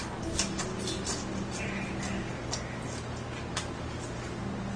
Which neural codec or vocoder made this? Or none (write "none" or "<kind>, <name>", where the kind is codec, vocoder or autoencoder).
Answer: none